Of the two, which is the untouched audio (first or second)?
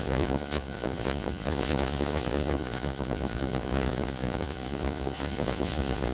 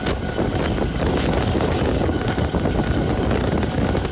second